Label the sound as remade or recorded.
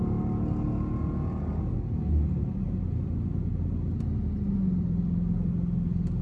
recorded